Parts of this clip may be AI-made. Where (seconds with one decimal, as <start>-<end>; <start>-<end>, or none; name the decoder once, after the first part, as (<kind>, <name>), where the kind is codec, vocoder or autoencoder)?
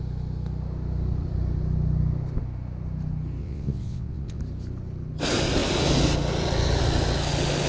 3.4-4.4 (vocoder, WaveNeXt)